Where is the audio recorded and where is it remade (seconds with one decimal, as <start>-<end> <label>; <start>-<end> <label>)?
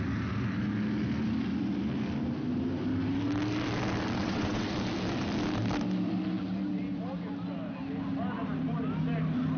0.0-4.2 recorded; 4.2-4.7 remade; 4.7-9.6 recorded